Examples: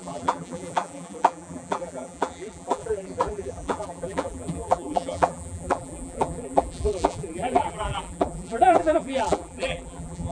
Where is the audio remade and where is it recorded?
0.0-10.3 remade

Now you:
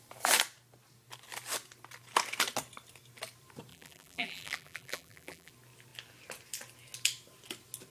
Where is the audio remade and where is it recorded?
0.0-3.7 recorded; 3.7-5.5 remade; 5.5-7.9 recorded

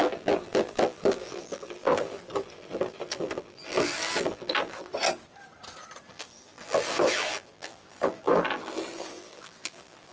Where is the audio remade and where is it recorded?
0.0-4.9 remade; 4.9-6.1 recorded; 6.1-10.1 remade

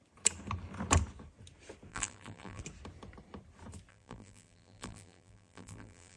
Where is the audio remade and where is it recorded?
0.0-1.9 recorded; 1.9-2.6 remade; 2.6-3.9 recorded; 3.9-6.2 remade

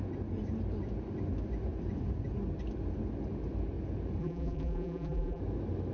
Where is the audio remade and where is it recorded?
0.0-4.2 recorded; 4.2-5.4 remade; 5.4-5.9 recorded